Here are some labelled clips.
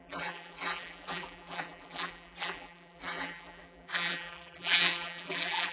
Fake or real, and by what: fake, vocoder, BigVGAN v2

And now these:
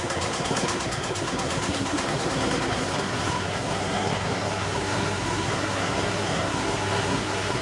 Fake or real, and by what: fake, codec, SNAC